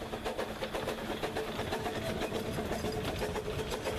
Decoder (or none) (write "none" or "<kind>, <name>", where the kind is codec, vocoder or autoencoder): none